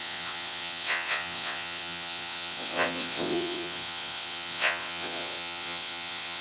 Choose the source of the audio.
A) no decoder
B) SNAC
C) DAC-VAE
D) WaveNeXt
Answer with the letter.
D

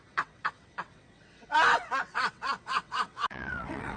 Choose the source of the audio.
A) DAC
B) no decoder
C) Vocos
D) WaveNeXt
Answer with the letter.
D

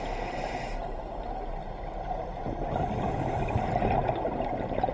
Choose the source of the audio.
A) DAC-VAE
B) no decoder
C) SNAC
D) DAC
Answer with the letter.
B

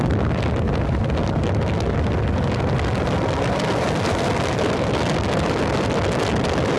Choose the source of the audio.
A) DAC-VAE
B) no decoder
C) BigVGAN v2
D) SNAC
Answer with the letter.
B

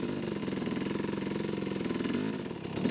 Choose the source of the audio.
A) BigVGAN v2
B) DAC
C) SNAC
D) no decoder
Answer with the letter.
D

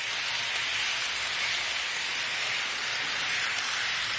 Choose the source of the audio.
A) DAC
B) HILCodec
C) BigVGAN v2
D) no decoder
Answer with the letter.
D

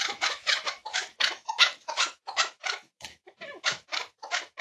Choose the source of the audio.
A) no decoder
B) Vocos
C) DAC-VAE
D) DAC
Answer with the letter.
C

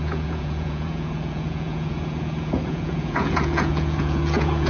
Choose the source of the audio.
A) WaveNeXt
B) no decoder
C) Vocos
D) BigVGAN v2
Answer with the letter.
C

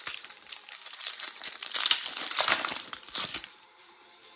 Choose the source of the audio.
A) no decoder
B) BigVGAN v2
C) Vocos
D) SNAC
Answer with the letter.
B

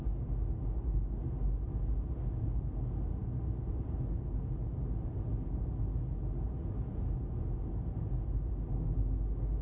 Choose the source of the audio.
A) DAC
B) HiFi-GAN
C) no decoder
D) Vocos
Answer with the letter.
C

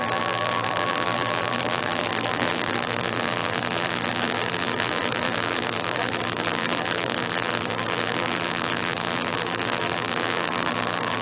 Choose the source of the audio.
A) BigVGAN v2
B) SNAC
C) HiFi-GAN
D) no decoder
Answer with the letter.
A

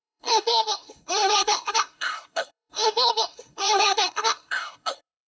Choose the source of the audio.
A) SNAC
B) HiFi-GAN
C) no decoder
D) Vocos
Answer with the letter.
A